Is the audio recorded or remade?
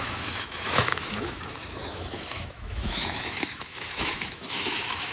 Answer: remade